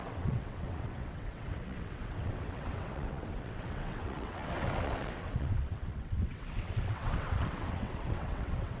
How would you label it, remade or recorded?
remade